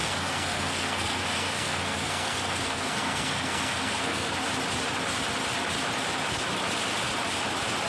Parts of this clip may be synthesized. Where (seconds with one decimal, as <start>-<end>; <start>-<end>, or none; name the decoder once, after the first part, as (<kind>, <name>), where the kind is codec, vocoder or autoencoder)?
0.0-4.3 (codec, SNAC)

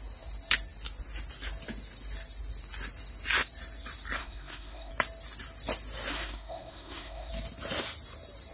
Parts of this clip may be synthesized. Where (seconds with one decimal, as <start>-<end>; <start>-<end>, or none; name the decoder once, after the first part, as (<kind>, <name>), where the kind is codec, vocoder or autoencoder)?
4.2-4.9 (codec, SNAC); 6.1-7.3